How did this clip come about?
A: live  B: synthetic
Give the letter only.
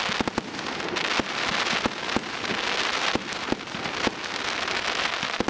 A